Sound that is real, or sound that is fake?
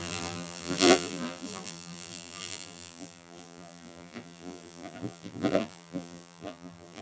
fake